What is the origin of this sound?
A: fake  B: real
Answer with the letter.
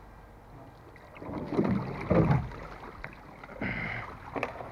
B